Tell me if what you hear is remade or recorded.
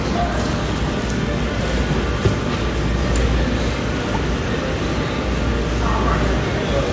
recorded